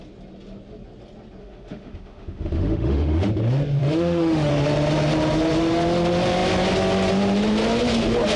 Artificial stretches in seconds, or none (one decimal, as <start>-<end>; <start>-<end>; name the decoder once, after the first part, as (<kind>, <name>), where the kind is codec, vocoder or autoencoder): 1.4-3.3 (autoencoder, DAC-VAE); 3.8-4.5